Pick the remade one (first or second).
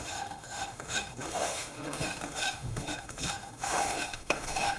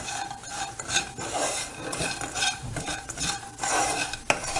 first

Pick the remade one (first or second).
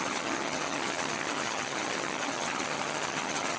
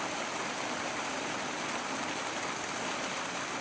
first